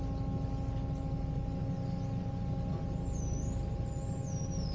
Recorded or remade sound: recorded